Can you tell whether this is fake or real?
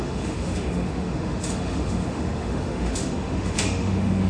fake